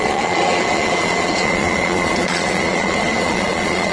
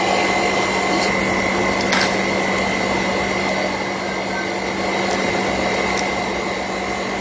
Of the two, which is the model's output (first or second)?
first